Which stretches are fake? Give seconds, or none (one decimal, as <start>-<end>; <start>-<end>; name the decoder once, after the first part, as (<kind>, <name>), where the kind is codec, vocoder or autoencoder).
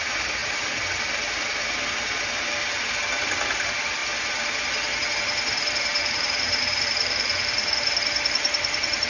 5.9-9.1 (vocoder, BigVGAN v2)